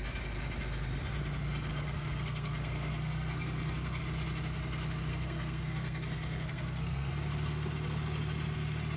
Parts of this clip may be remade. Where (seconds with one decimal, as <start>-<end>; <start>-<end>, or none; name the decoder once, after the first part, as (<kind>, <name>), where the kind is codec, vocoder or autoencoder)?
1.7-4.0 (codec, SNAC); 5.1-7.1